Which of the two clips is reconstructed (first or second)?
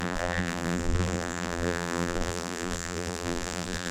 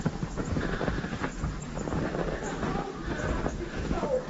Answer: first